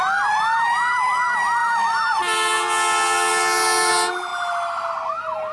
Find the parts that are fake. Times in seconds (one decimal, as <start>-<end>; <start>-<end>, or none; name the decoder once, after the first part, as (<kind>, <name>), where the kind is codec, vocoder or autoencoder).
none